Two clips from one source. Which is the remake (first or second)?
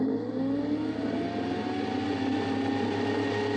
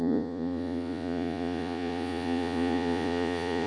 second